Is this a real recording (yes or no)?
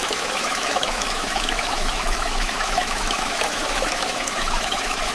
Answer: no